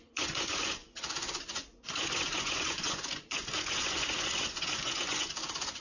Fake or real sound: fake